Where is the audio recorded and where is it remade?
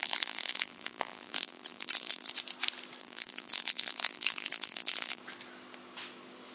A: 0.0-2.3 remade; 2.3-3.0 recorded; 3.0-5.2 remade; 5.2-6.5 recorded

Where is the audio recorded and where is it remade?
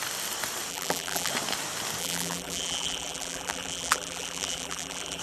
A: 0.0-0.7 recorded; 0.7-1.3 remade; 1.3-2.0 recorded; 2.0-5.2 remade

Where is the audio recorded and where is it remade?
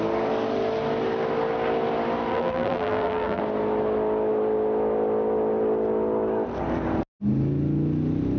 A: 0.0-2.3 recorded; 2.3-3.4 remade; 3.4-8.4 recorded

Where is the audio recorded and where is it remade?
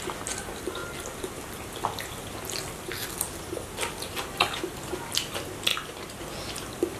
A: 0.0-5.7 recorded; 5.7-6.2 remade; 6.2-7.0 recorded